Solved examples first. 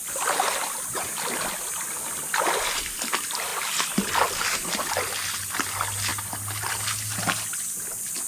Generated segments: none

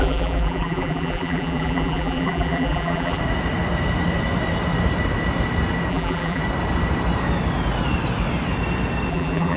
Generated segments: 0.0-3.2 (vocoder, BigVGAN v2); 5.9-6.4; 9.1-9.6